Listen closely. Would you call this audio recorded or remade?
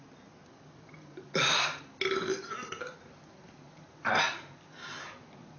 recorded